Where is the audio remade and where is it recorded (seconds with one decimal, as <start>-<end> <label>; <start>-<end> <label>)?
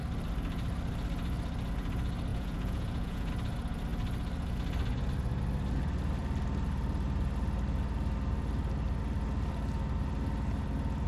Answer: 0.0-2.3 recorded; 2.3-3.3 remade; 3.3-11.1 recorded